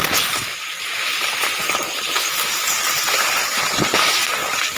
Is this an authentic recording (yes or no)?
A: yes